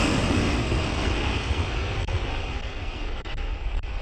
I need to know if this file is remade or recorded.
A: remade